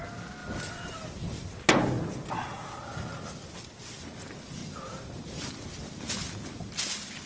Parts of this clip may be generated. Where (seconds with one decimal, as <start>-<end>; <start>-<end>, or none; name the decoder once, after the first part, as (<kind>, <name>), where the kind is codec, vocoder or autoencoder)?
4.6-6.0 (vocoder, BigVGAN v2)

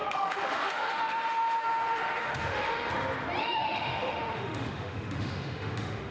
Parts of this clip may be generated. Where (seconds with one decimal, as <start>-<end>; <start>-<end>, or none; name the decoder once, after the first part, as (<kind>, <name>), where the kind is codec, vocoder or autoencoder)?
0.0-2.9 (autoencoder, DAC-VAE); 3.4-6.1

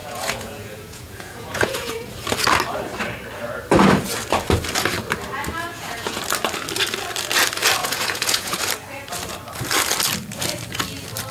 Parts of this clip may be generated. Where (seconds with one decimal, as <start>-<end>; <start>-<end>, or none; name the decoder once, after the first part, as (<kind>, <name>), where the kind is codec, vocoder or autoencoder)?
0.0-2.1 (vocoder, Vocos); 5.7-6.2; 7.8-8.6

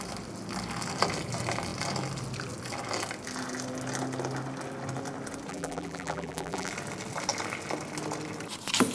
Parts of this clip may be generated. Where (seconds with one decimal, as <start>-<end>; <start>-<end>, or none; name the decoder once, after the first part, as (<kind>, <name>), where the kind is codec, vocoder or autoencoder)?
5.5-6.7 (vocoder, BigVGAN v2)

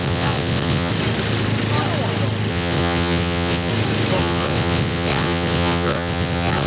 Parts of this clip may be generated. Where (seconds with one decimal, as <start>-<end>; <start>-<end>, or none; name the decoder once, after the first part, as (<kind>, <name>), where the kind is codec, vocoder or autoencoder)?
0.0-0.9 (vocoder, WaveNeXt); 2.5-3.7; 4.2-6.7

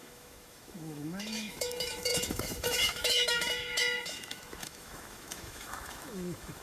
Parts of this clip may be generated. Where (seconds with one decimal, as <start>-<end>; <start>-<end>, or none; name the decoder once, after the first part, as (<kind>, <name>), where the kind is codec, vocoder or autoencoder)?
0.0-6.6 (autoencoder, DAC-VAE)

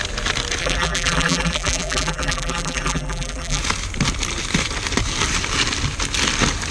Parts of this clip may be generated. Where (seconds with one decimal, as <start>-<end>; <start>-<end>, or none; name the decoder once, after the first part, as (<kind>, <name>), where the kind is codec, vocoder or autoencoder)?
0.6-3.6 (vocoder, BigVGAN v2)